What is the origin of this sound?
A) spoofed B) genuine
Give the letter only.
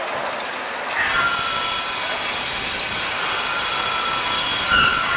B